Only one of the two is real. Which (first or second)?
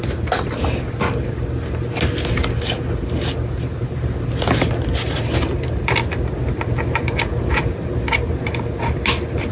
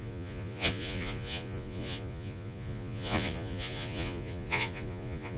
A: first